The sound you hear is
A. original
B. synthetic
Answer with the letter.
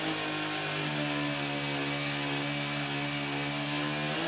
A